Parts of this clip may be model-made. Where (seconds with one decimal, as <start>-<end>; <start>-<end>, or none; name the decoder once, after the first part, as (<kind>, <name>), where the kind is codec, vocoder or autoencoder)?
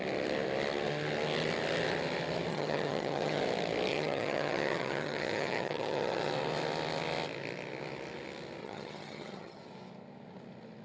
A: 2.5-3.4 (vocoder, HiFi-GAN); 3.9-6.3; 8.6-9.6